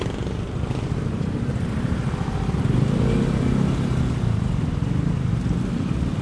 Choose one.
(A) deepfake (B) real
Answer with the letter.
B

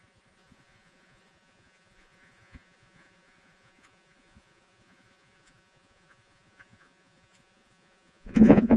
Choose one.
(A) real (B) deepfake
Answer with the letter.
B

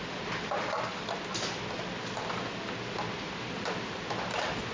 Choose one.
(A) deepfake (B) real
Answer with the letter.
B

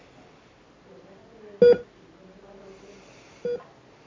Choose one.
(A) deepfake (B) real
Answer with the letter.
B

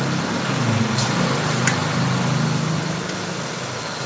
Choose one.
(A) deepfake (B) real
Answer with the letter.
B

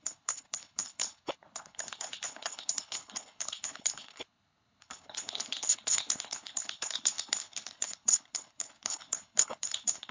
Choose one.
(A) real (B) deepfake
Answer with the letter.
B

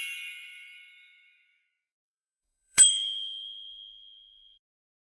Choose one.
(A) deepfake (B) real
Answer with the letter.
A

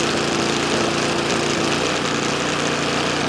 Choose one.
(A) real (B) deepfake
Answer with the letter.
A